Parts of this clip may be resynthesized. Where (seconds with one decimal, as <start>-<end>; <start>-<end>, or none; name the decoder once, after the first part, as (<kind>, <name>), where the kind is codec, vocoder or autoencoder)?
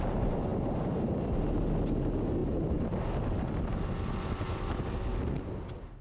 none